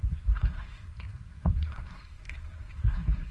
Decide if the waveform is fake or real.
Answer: fake